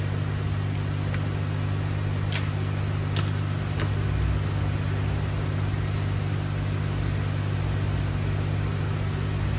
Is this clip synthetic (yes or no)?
no